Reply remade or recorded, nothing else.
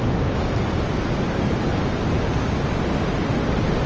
recorded